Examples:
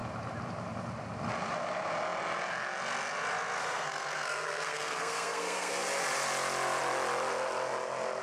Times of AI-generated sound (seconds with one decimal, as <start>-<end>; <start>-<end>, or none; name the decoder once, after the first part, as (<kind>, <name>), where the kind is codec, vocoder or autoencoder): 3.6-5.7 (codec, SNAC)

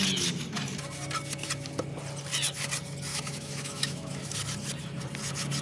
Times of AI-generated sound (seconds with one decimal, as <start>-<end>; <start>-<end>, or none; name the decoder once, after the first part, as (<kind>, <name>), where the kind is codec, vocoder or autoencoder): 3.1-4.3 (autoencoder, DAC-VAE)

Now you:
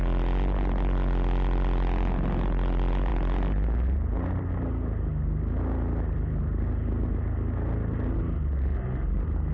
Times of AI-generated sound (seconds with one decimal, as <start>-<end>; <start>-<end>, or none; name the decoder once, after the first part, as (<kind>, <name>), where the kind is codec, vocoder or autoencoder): none

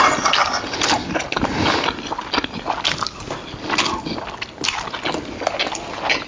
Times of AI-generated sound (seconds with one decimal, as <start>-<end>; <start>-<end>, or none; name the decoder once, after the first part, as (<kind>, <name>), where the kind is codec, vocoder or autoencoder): none